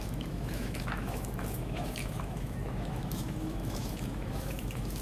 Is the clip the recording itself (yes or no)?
no